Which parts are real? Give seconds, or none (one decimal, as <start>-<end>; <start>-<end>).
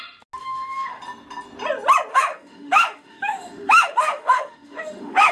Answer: 0.0-0.4; 1.0-2.1